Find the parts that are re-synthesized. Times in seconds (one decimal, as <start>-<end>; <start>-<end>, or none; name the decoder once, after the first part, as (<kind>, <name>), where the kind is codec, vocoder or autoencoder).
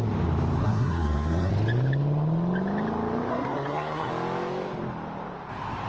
0.6-1.5 (codec, SNAC); 3.3-4.1